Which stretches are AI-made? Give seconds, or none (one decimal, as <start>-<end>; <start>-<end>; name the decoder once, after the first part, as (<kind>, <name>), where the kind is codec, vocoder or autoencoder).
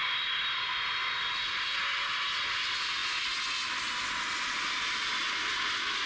none